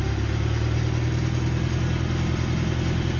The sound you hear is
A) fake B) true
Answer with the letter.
B